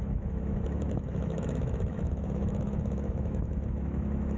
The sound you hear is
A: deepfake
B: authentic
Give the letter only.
A